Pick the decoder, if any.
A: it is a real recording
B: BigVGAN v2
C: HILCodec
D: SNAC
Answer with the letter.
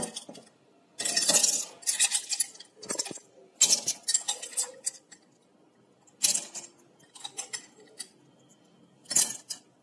A